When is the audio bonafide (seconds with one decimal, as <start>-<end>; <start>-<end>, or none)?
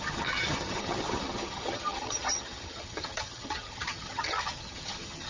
none